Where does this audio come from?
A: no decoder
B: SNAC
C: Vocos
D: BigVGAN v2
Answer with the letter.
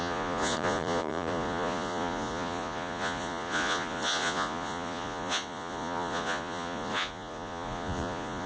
C